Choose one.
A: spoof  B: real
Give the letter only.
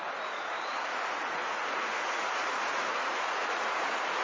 A